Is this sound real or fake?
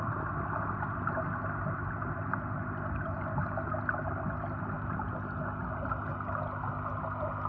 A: real